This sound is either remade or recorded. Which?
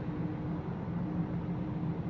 recorded